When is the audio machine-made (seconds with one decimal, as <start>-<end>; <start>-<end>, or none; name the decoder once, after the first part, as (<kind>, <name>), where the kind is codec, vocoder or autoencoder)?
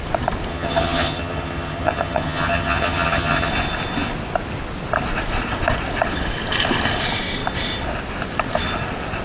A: 0.5-3.5 (vocoder, HiFi-GAN)